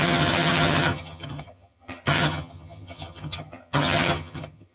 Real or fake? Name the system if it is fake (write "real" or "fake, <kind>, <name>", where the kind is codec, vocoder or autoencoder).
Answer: fake, vocoder, HiFi-GAN